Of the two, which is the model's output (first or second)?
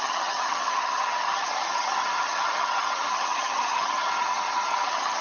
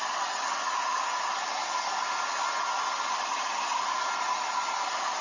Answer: first